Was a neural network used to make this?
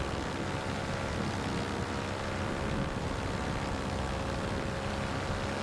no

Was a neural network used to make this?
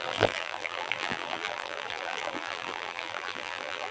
yes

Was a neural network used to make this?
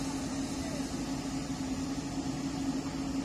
no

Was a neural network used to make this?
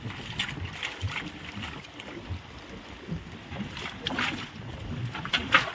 no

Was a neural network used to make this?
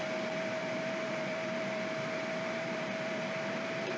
yes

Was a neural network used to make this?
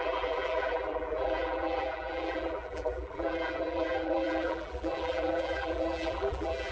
yes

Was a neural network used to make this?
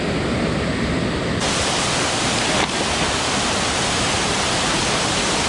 no